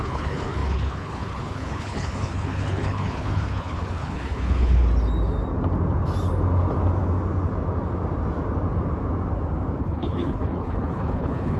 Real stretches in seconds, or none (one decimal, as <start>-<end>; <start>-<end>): 4.8-9.8